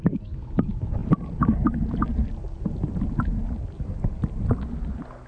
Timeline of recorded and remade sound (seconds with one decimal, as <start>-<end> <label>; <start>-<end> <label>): 0.0-5.3 recorded

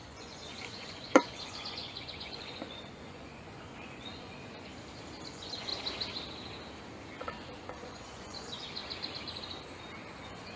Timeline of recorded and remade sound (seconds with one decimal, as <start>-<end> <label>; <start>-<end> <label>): 0.0-4.7 remade; 4.7-5.3 recorded; 5.3-5.7 remade; 5.7-7.2 recorded; 7.2-8.8 remade; 8.8-10.2 recorded; 10.2-10.6 remade

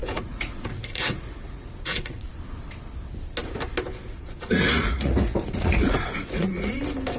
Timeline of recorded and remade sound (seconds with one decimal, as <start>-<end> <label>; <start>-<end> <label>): 0.0-2.3 remade; 2.3-3.9 recorded; 3.9-6.8 remade; 6.8-7.2 recorded

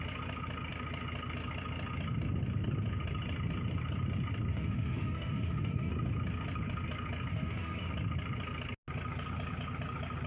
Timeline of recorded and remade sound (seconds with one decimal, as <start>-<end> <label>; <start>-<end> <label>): 0.0-4.5 recorded; 4.5-5.9 remade; 5.9-7.3 recorded; 7.3-7.9 remade; 7.9-10.3 recorded